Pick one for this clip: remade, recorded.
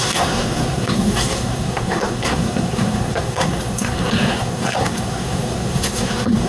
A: remade